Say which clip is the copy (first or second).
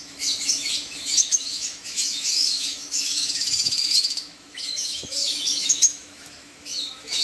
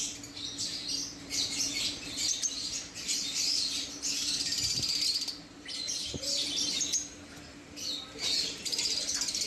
first